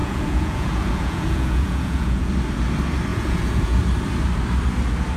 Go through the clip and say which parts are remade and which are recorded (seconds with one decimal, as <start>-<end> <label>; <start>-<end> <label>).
0.0-2.3 remade; 2.3-3.1 recorded; 3.1-3.8 remade; 3.8-5.2 recorded